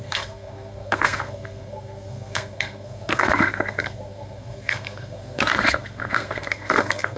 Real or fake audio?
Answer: fake